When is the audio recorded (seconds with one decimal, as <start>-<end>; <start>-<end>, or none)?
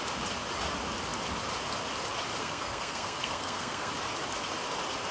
0.0-2.4; 3.9-5.1